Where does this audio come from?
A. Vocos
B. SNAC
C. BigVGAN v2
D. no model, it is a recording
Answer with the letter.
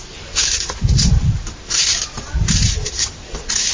D